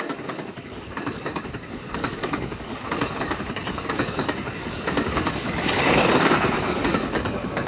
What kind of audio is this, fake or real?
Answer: fake